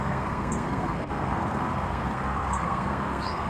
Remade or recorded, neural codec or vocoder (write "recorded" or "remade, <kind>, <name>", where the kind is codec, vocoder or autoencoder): remade, codec, SNAC